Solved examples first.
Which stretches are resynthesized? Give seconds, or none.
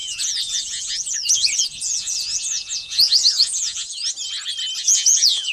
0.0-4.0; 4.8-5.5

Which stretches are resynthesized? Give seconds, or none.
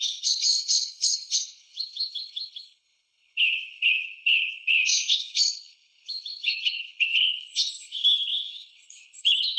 0.0-9.6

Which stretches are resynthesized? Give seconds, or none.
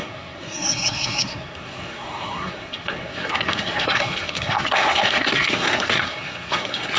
0.0-7.0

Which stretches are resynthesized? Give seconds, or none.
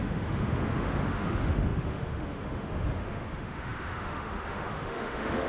0.0-5.5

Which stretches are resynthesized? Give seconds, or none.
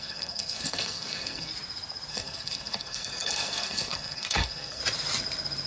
0.0-1.5; 2.1-4.8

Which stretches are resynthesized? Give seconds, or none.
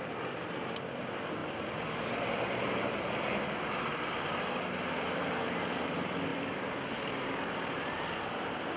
1.4-4.7; 6.3-6.9